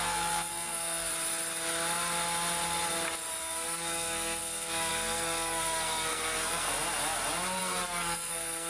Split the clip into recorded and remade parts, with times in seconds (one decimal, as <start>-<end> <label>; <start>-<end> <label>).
0.0-1.1 remade; 1.1-3.4 recorded; 3.4-6.7 remade; 6.7-7.6 recorded; 7.6-8.7 remade